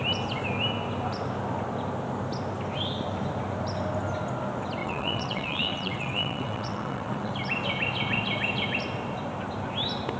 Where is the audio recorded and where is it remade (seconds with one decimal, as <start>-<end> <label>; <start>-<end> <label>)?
0.0-4.8 recorded; 4.8-7.3 remade; 7.3-10.2 recorded